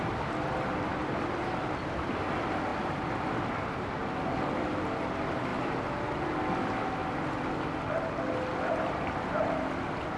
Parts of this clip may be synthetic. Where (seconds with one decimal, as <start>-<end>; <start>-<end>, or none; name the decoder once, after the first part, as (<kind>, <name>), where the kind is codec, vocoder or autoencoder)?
7.0-9.2 (vocoder, BigVGAN v2)